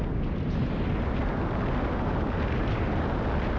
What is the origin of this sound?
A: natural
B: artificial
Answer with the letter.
A